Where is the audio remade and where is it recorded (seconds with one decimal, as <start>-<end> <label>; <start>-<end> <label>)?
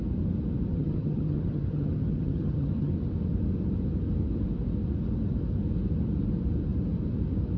0.0-0.7 recorded; 0.7-2.9 remade; 2.9-7.6 recorded